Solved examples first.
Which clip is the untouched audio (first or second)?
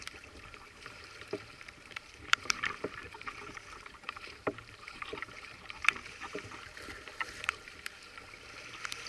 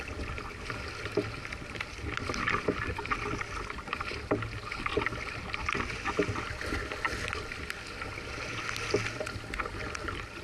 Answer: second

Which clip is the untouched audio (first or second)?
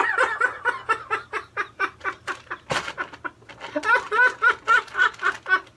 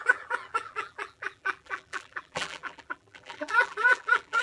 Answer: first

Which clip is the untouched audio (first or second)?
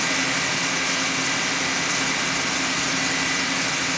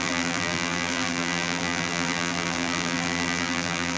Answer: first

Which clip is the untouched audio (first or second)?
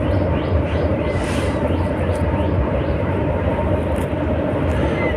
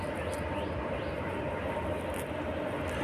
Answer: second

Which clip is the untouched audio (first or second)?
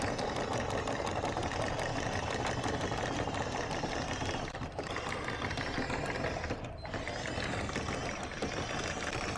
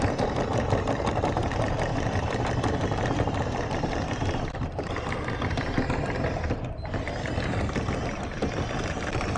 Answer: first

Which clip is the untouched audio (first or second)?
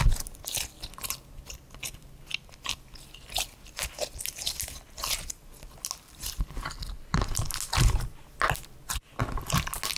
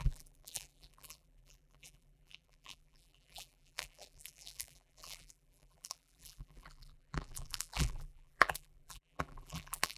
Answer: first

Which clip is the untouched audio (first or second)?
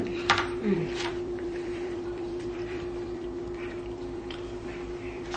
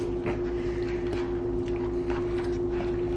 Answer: second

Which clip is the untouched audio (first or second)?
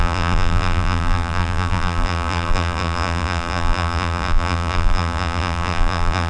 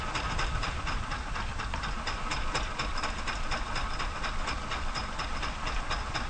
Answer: second